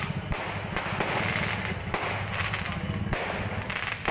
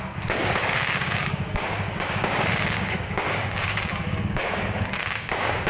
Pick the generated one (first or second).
second